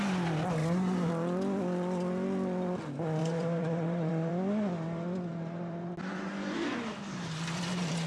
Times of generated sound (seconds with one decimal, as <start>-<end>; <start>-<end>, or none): 0.6-1.1; 3.2-4.3